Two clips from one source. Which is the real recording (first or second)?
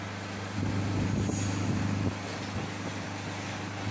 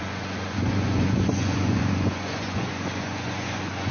first